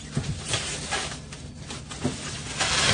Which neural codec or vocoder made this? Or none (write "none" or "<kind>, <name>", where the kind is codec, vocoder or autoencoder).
none